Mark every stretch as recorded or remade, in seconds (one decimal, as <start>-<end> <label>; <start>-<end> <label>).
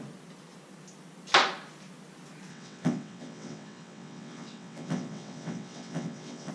0.0-2.5 recorded; 2.5-6.5 remade